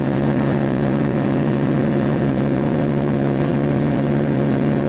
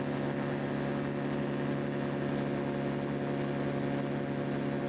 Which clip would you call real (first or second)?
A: second